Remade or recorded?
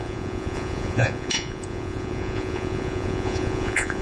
remade